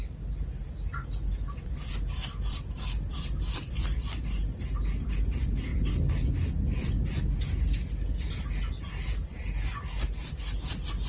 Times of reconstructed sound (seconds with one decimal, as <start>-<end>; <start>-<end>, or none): none